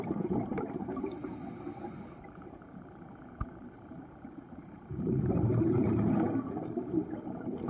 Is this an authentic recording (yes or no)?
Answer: no